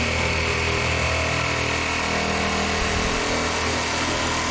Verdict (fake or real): real